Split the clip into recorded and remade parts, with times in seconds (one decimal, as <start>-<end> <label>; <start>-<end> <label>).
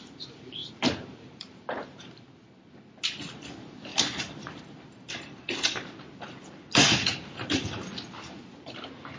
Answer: 0.0-0.6 recorded; 0.6-2.5 remade; 2.5-3.9 recorded; 3.9-4.6 remade; 4.6-9.2 recorded